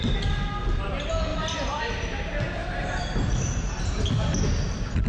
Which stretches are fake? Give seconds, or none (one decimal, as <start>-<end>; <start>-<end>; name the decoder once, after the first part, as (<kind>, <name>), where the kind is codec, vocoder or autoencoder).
1.3-1.8 (vocoder, BigVGAN v2); 2.6-3.3